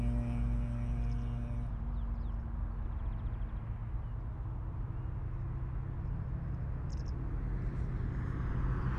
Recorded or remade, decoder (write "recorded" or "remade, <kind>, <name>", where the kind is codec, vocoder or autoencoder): recorded